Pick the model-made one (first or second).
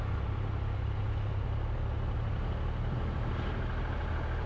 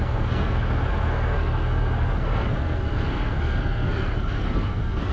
second